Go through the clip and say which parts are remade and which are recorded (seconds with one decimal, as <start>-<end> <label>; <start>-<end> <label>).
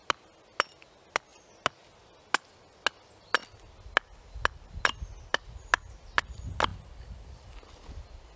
0.0-6.7 recorded; 6.7-7.5 remade; 7.5-8.4 recorded